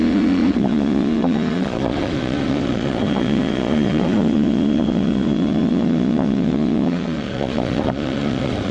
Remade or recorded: remade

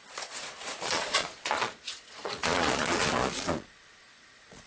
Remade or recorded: remade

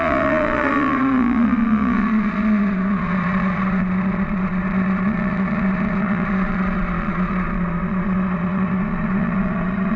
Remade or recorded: remade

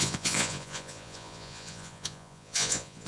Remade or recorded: remade